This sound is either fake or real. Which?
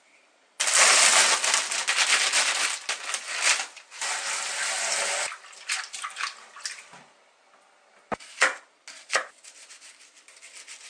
real